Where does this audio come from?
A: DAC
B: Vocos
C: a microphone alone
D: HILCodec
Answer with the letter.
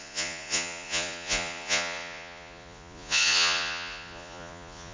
B